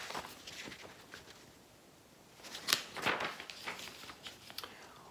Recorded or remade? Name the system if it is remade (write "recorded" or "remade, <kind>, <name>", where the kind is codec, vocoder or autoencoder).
recorded